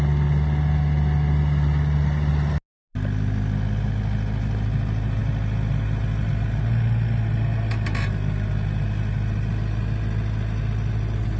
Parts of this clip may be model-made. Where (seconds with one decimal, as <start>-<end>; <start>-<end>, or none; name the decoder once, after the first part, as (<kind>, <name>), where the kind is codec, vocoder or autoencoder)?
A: none